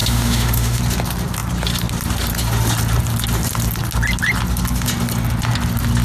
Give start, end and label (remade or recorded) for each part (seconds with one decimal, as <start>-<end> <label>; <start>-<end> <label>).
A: 0.0-0.8 remade; 0.8-6.0 recorded